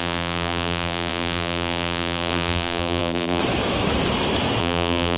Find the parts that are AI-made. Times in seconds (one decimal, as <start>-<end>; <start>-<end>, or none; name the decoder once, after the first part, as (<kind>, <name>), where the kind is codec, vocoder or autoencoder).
0.0-3.4 (vocoder, BigVGAN v2); 4.6-5.2